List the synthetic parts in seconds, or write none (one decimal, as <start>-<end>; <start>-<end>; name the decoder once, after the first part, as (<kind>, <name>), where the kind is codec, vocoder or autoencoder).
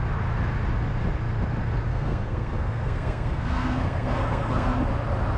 1.9-4.8 (codec, SNAC)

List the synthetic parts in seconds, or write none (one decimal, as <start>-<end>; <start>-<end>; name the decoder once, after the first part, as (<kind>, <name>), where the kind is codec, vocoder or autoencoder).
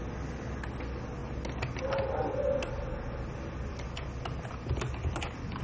none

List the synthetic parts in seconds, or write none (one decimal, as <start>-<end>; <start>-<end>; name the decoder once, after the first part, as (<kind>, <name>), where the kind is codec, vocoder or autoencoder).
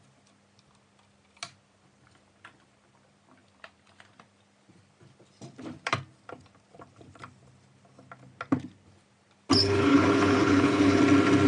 9.6-11.0 (codec, HILCodec)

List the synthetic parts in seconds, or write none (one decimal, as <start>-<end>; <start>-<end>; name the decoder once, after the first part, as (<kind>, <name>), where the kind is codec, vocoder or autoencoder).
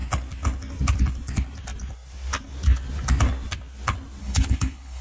4.2-5.0 (codec, HILCodec)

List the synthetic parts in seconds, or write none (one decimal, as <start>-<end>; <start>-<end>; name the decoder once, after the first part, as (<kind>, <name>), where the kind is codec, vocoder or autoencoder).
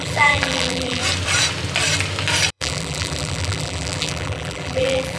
0.0-1.0 (vocoder, BigVGAN v2); 2.5-5.2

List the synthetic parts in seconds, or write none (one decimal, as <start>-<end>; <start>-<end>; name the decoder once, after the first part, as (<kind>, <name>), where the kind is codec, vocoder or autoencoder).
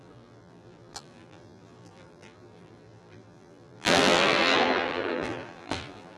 0.0-6.2 (vocoder, BigVGAN v2)